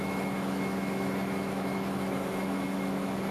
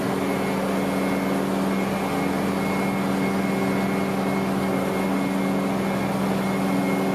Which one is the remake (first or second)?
first